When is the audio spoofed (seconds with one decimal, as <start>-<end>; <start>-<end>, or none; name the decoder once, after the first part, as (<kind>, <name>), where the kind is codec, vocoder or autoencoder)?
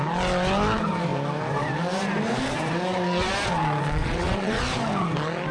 4.0-4.6 (vocoder, WaveNeXt)